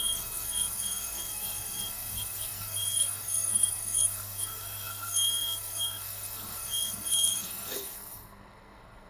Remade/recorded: remade